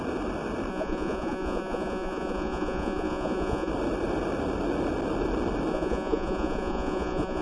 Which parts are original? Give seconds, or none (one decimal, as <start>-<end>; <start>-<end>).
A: 0.0-0.7; 3.7-5.7